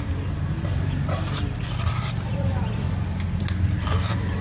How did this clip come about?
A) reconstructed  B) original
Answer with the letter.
B